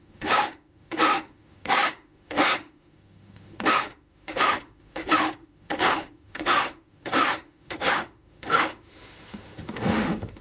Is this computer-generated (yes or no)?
yes